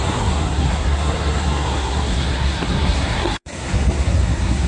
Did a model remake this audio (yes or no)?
yes